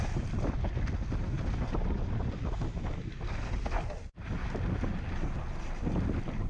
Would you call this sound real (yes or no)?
yes